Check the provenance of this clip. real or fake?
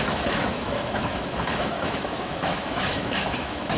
fake